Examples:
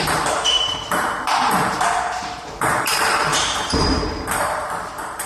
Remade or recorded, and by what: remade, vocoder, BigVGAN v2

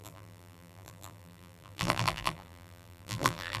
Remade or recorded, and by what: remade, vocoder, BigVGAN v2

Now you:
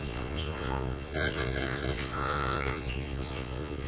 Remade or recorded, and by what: remade, vocoder, Vocos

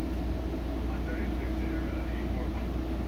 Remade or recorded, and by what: recorded